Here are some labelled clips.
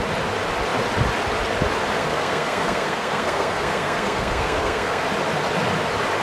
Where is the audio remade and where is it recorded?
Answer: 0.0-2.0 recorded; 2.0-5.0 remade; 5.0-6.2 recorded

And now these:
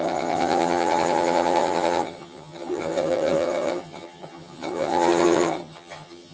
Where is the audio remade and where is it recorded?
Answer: 0.0-6.3 remade

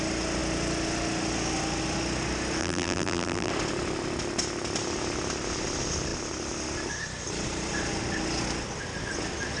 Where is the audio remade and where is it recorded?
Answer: 0.0-2.6 recorded; 2.6-3.5 remade; 3.5-9.6 recorded

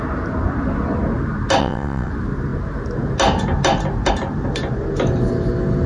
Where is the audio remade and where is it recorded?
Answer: 0.0-1.6 recorded; 1.6-2.1 remade; 2.1-5.9 recorded

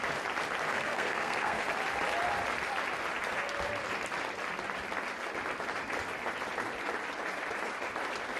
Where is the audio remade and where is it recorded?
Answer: 0.0-0.7 recorded; 0.7-1.6 remade; 1.6-8.4 recorded

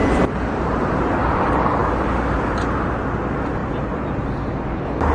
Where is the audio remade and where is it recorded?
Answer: 0.0-1.2 remade; 1.2-1.8 recorded; 1.8-2.9 remade; 2.9-3.6 recorded; 3.6-4.2 remade; 4.2-5.1 recorded

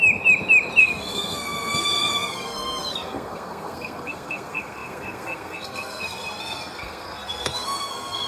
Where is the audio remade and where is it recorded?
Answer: 0.0-0.8 recorded; 0.8-8.3 remade